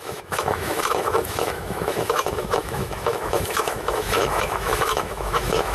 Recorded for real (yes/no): no